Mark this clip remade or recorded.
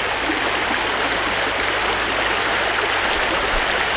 recorded